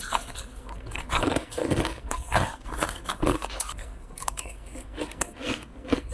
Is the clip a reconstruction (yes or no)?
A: yes